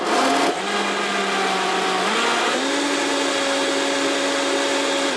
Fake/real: real